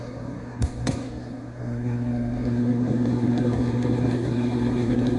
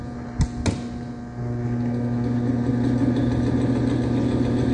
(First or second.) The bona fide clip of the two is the second